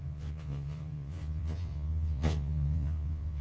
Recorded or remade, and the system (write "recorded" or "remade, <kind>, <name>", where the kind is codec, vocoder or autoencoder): remade, vocoder, Vocos